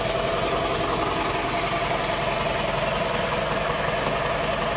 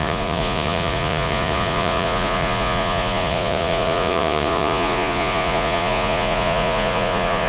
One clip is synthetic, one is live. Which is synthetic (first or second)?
second